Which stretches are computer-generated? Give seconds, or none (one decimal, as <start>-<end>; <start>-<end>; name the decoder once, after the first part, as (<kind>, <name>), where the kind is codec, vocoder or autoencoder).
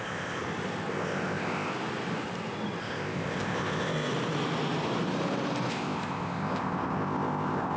0.0-0.4 (codec, ZipCodec); 0.9-1.7; 2.8-4.1; 5.7-7.8